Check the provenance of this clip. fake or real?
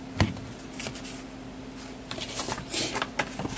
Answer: real